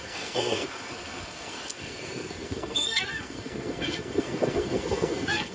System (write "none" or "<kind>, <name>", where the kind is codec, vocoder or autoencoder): codec, SNAC